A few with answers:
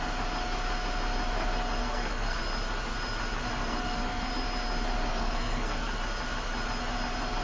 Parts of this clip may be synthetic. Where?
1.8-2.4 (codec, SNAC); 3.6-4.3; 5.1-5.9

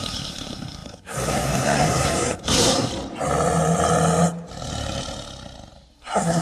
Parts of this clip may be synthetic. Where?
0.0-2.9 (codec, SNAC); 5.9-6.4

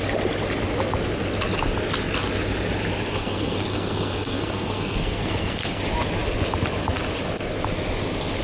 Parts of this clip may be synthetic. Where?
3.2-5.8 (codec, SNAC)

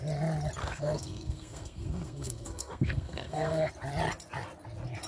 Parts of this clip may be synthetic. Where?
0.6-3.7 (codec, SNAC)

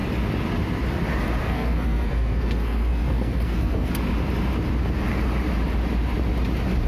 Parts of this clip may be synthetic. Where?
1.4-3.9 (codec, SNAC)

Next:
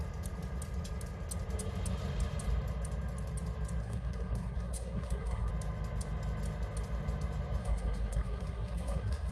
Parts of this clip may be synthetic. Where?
3.8-5.5 (codec, SNAC); 7.6-9.3

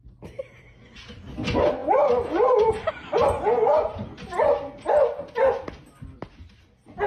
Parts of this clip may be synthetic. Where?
none